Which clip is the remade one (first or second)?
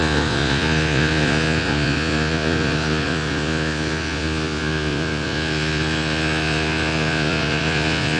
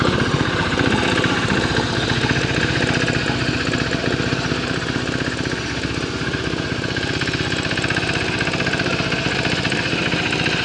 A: first